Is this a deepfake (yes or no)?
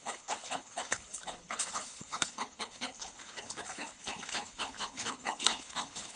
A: yes